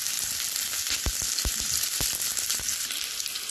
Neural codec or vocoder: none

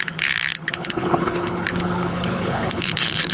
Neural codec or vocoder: codec, HILCodec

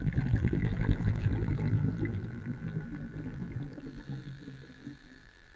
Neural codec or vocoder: vocoder, BigVGAN v2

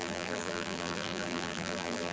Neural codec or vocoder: vocoder, BigVGAN v2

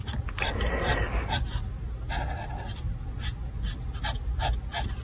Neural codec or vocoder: none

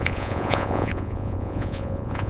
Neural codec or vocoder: vocoder, Vocos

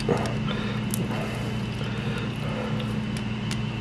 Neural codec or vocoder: none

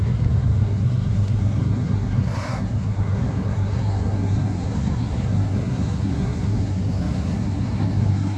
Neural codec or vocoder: codec, SNAC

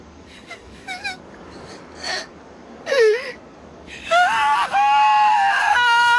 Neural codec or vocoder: codec, DAC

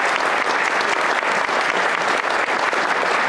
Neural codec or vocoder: none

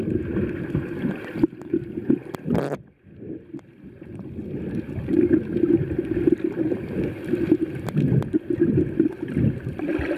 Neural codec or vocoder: none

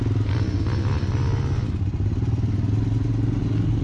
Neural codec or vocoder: none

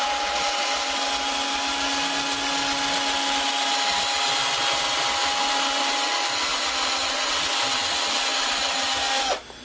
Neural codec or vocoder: none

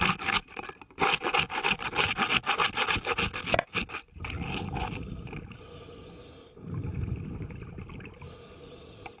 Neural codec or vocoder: none